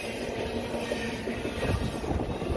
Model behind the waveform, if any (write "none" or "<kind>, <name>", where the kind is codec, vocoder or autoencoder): none